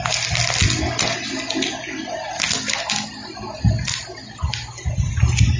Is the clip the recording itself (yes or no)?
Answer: yes